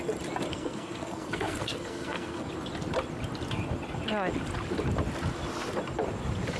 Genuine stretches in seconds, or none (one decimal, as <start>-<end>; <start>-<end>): 0.0-0.5; 2.5-6.6